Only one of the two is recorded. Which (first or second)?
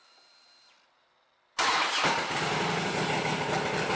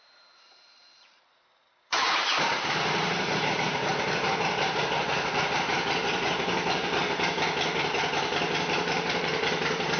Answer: first